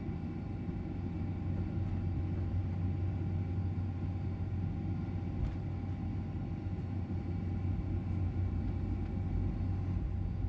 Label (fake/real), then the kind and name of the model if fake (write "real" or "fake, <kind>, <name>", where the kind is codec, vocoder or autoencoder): real